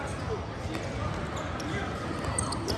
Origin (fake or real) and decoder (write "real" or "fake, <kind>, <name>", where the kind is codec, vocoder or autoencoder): real